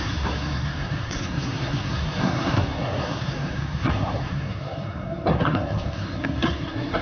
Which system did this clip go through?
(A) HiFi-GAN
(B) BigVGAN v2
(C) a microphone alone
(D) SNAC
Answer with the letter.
D